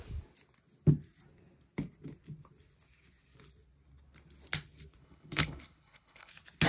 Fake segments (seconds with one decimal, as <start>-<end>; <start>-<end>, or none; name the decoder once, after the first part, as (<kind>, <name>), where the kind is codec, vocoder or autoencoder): 5.0-6.3 (codec, HILCodec)